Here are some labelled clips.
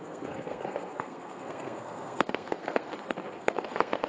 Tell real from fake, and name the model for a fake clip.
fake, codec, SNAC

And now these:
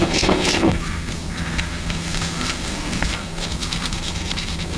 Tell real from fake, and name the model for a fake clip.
fake, codec, SNAC